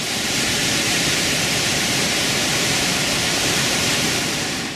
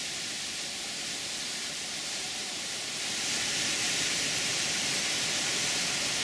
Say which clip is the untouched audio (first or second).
second